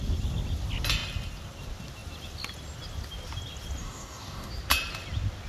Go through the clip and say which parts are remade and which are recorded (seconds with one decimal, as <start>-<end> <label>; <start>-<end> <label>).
0.0-3.8 recorded; 3.8-4.5 remade; 4.5-5.5 recorded